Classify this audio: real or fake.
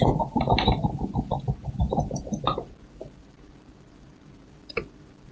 fake